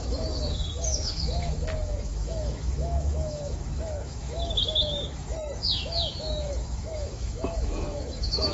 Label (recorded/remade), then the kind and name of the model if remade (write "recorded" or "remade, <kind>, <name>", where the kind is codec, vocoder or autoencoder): remade, autoencoder, DAC-VAE